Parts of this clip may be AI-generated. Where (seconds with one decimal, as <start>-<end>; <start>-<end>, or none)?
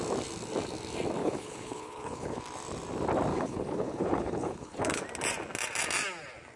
1.2-2.4; 3.3-5.0